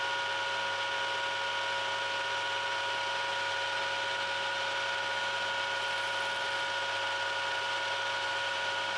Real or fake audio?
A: real